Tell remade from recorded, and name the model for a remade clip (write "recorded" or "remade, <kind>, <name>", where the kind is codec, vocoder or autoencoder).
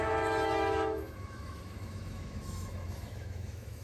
remade, autoencoder, DAC-VAE